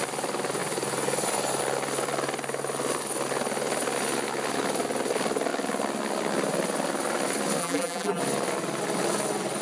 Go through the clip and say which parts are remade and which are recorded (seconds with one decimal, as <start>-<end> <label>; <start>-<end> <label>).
0.0-7.6 recorded; 7.6-8.2 remade; 8.2-9.6 recorded